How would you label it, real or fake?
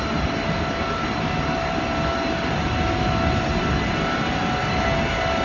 real